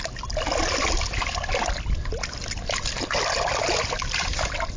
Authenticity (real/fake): real